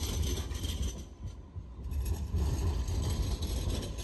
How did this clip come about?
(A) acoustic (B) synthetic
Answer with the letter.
A